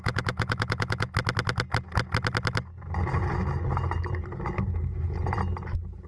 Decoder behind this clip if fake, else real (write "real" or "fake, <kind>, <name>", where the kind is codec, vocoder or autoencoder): real